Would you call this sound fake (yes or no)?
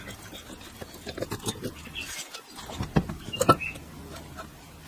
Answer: no